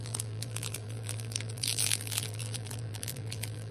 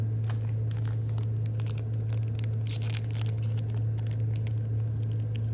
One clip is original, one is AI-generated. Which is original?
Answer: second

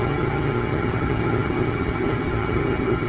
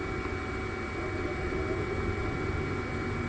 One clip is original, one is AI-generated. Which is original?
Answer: second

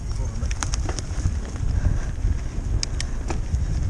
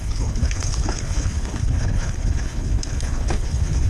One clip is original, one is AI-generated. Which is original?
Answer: first